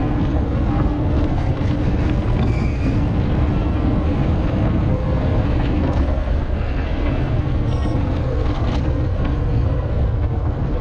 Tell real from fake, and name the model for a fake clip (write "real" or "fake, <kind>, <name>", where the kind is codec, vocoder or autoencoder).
fake, codec, SNAC